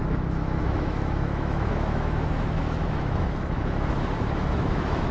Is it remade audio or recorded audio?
remade